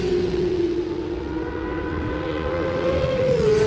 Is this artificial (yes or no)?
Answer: yes